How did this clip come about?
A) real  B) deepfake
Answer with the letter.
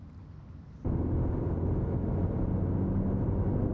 A